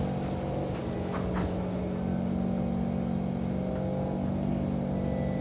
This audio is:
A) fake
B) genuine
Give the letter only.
B